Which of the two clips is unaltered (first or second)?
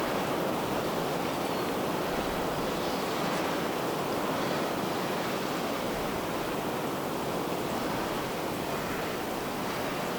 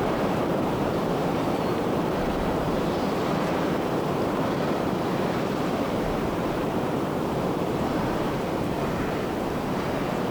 first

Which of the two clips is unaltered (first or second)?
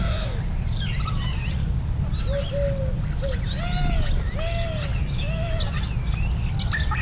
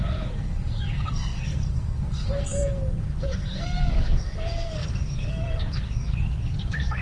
first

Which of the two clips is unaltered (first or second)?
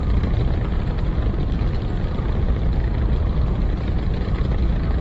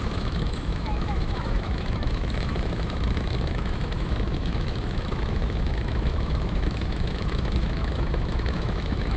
first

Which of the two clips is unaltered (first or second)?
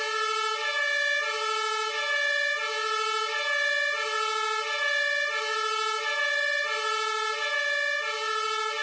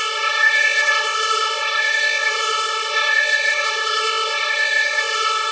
first